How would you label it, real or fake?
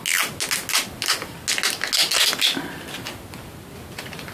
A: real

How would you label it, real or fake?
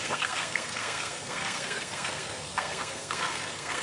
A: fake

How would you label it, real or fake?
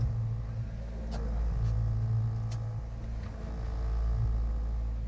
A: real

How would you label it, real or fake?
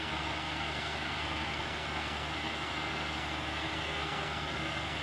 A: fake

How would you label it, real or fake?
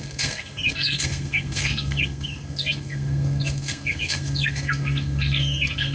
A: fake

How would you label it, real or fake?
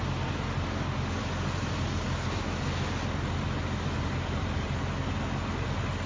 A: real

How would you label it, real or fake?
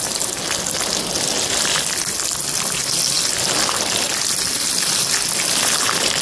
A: real